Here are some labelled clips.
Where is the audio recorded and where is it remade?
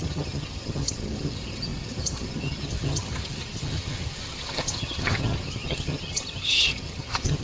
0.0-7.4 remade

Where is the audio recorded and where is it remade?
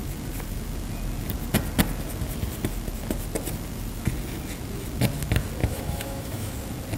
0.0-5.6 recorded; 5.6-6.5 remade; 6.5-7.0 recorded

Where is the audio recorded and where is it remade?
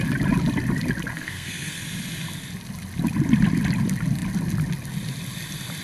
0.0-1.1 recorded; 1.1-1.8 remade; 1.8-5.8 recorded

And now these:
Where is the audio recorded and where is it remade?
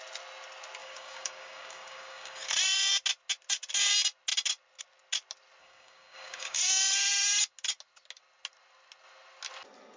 0.0-0.8 recorded; 0.8-2.5 remade; 2.5-5.6 recorded; 5.6-6.6 remade; 6.6-10.0 recorded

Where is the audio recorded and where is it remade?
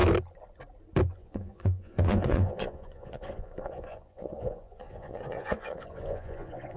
0.0-1.1 recorded; 1.1-6.8 remade